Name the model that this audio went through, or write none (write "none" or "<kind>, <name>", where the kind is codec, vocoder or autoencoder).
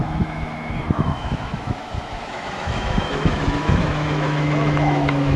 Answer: autoencoder, DAC-VAE